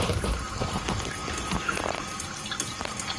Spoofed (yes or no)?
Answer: no